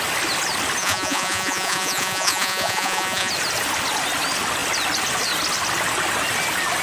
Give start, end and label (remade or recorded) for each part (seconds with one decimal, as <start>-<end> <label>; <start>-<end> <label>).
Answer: 0.0-0.8 recorded; 0.8-3.3 remade; 3.3-6.8 recorded